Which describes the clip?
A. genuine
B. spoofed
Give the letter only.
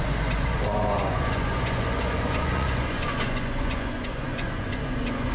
B